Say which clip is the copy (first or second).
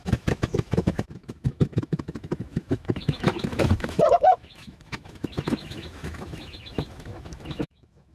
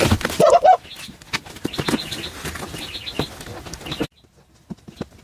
first